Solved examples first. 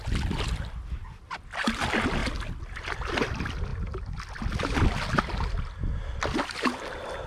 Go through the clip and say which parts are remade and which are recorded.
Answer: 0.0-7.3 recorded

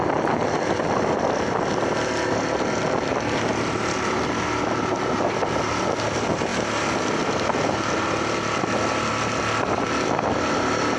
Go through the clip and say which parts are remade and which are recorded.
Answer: 0.0-11.0 recorded

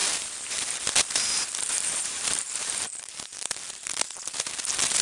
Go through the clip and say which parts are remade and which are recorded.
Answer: 0.0-5.0 remade